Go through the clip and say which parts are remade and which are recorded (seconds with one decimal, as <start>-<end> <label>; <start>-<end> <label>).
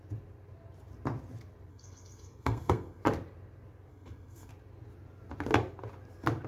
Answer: 0.0-1.7 recorded; 1.7-3.0 remade; 3.0-3.9 recorded; 3.9-4.5 remade; 4.5-6.5 recorded